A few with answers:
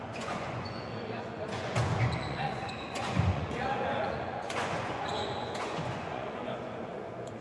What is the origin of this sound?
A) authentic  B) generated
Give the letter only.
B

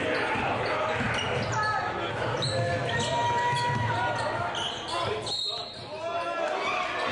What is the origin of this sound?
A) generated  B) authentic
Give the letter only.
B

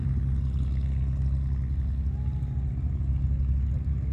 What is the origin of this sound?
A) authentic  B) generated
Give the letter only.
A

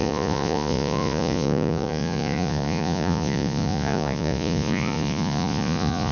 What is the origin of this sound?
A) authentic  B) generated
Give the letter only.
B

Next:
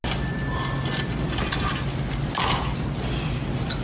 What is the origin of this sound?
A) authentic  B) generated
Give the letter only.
A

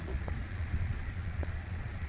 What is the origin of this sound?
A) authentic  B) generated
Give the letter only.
B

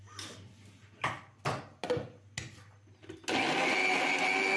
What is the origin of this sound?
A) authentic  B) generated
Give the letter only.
A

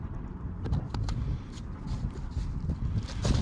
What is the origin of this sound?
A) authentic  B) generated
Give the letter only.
A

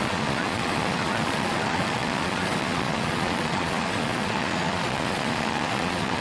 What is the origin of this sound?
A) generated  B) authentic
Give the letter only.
A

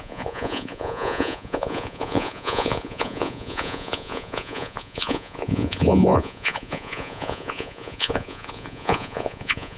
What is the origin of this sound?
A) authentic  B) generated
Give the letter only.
B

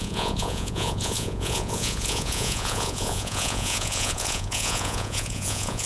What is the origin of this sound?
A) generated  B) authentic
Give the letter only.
A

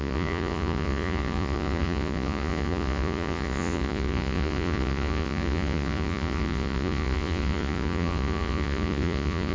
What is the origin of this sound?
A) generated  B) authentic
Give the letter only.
A